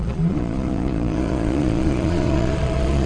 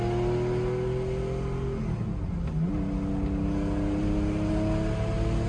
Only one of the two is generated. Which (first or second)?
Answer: first